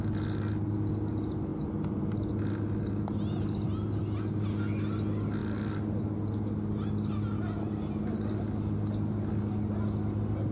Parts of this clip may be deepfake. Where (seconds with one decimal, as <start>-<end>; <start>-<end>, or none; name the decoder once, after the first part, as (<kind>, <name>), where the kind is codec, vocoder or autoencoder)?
none